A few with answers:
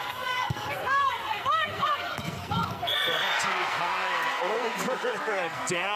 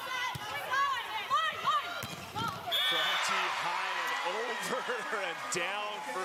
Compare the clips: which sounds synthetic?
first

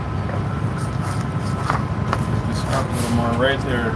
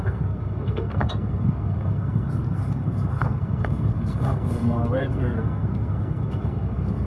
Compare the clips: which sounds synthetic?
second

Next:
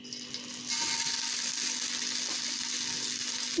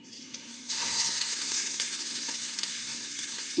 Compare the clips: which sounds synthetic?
second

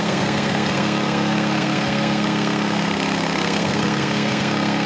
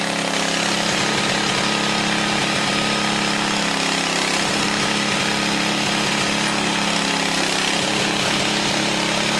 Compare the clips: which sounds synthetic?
first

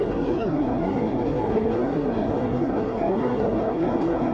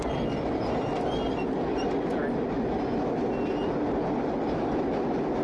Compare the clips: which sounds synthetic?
first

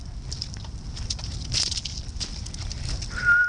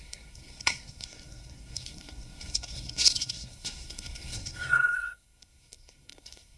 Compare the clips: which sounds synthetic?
second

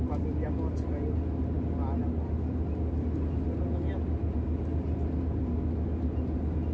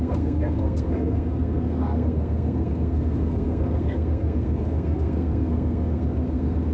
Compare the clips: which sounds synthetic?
second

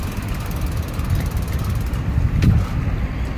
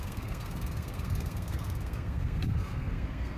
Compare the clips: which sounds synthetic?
second